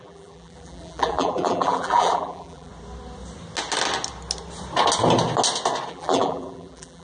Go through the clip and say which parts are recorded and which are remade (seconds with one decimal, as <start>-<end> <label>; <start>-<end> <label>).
0.0-2.7 remade; 2.7-5.9 recorded; 5.9-7.0 remade